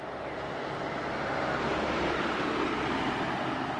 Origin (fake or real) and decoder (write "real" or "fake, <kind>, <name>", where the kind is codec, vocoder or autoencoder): fake, vocoder, BigVGAN v2